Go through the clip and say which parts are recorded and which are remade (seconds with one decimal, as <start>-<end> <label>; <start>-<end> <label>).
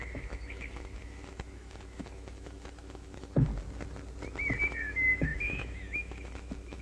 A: 0.0-3.5 remade; 3.5-4.6 recorded; 4.6-6.8 remade